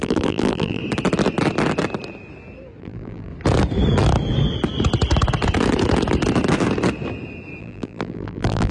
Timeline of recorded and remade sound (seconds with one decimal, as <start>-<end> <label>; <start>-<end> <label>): 0.0-0.8 remade; 0.8-2.8 recorded; 2.8-3.3 remade; 3.3-7.6 recorded; 7.6-8.7 remade